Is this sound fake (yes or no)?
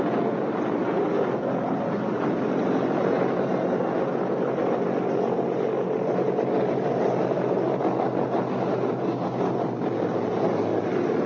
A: no